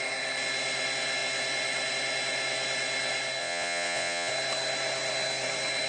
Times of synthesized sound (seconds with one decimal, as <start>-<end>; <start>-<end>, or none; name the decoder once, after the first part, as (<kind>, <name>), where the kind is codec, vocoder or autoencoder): 3.4-4.3 (vocoder, Vocos)